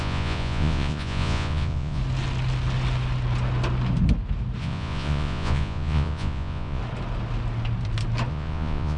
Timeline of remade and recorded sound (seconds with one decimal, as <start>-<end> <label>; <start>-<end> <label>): 0.0-2.0 remade; 2.0-4.6 recorded; 4.6-6.8 remade; 6.8-8.3 recorded; 8.3-9.0 remade